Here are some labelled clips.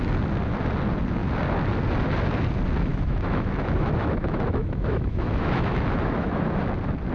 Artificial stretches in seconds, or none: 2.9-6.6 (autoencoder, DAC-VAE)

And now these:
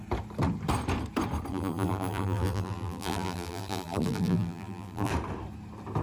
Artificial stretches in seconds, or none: 1.5-5.1 (vocoder, BigVGAN v2)

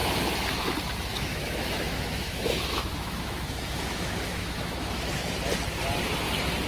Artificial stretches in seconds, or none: 0.0-0.6 (autoencoder, DAC-VAE); 1.1-5.1

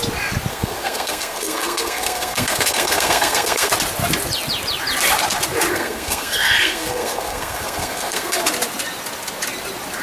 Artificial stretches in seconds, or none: 0.5-3.7 (codec, SNAC); 5.7-8.4

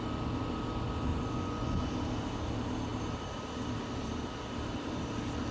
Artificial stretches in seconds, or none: 1.1-1.8 (vocoder, Vocos)

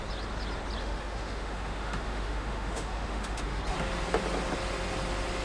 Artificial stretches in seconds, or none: 0.8-3.6 (autoencoder, DAC-VAE)

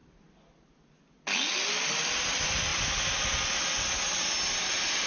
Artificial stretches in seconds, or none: none

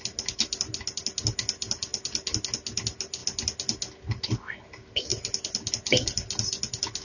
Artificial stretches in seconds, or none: none